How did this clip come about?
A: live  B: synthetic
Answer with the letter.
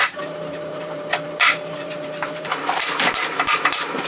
B